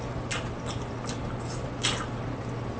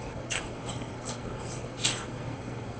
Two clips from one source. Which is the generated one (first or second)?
second